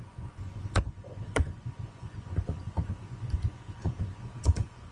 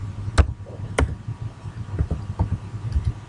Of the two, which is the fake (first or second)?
first